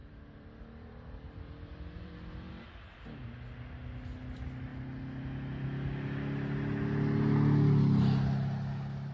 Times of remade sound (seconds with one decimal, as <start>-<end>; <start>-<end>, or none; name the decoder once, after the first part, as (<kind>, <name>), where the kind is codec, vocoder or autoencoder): 0.0-2.5 (vocoder, BigVGAN v2)